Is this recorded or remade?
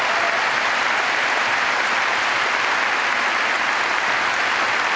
recorded